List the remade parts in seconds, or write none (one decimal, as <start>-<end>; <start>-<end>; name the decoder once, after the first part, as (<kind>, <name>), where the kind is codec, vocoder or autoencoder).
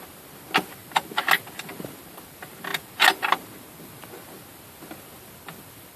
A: none